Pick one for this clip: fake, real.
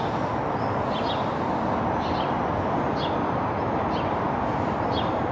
real